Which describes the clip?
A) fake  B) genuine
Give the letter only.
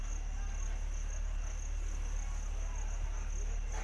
B